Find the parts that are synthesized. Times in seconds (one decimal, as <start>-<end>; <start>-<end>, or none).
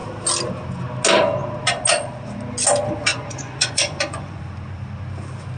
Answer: 3.1-4.4